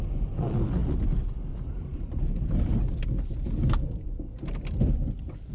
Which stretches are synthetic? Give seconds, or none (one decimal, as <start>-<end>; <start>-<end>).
none